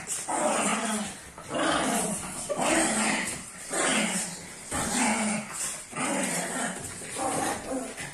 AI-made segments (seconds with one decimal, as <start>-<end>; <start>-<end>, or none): none